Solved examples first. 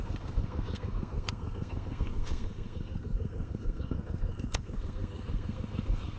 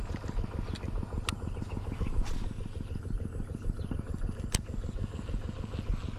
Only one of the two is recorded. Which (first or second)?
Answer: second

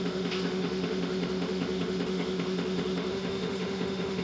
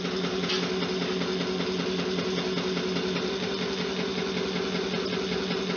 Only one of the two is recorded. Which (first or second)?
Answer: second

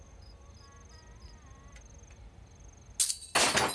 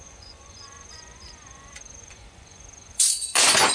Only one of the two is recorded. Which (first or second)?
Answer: first